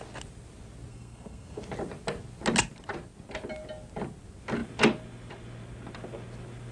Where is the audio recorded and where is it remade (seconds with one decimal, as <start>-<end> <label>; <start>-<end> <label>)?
0.0-0.9 recorded; 0.9-1.6 remade; 1.6-6.7 recorded